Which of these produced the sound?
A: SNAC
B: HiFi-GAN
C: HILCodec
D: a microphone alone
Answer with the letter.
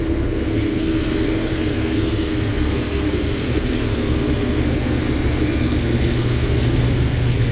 A